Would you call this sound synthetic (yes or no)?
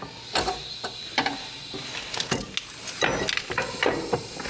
no